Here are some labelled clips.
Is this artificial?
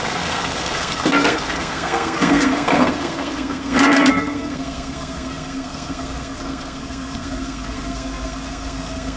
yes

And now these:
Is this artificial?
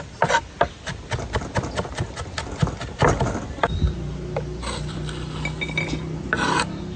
no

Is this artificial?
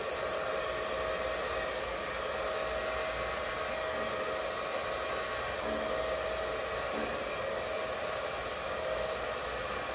no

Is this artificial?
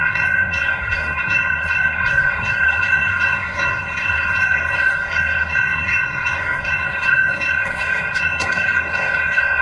yes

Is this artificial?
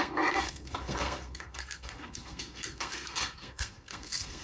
yes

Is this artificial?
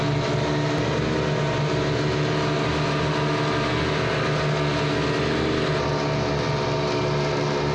no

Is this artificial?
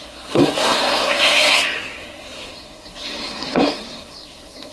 yes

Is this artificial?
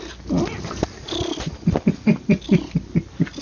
no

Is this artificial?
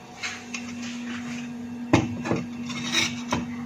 no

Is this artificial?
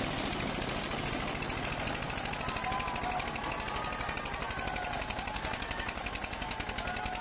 no